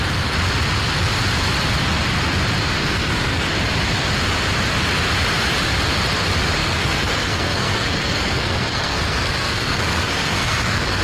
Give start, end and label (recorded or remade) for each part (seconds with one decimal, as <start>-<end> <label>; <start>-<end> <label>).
0.0-2.8 recorded; 2.8-3.5 remade; 3.5-6.6 recorded; 6.6-11.0 remade